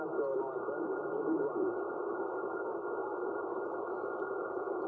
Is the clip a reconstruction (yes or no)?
no